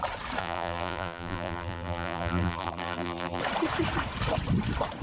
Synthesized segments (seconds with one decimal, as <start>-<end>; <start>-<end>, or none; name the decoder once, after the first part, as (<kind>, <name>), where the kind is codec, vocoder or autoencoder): 0.4-3.4 (vocoder, BigVGAN v2)